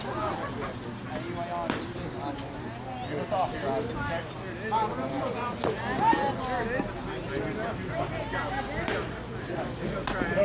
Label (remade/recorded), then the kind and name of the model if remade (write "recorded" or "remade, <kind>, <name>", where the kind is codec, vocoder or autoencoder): recorded